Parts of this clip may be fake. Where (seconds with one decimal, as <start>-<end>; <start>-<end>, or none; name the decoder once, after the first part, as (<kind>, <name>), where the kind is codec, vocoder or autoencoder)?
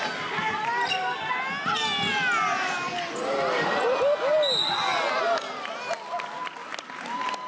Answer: none